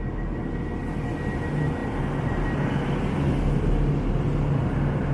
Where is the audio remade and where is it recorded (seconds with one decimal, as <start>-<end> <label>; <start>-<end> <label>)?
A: 0.0-5.1 recorded